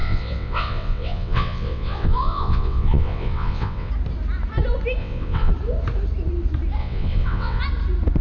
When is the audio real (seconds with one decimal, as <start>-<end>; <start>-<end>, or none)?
3.9-5.0; 5.5-6.8; 7.6-8.2

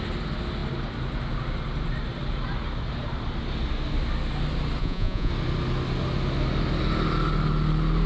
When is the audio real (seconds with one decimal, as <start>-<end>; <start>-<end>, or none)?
0.0-4.8; 5.3-8.1

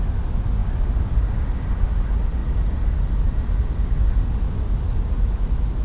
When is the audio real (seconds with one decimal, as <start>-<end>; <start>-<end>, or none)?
0.0-5.8